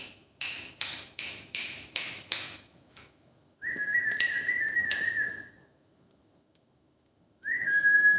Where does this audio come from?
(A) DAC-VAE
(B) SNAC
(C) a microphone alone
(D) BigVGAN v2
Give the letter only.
A